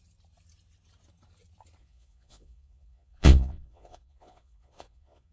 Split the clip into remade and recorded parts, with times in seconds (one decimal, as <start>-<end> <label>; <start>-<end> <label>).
0.0-1.8 recorded; 1.8-5.3 remade